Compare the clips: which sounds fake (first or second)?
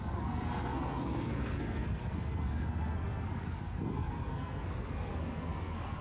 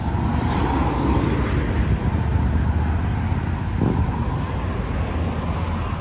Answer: first